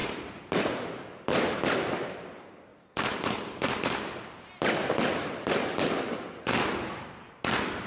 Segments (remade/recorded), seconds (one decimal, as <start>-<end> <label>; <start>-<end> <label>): 0.0-2.7 recorded; 2.7-6.2 remade; 6.2-7.9 recorded